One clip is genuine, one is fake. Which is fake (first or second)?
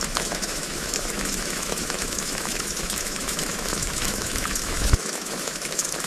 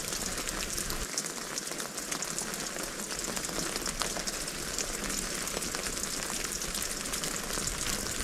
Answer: first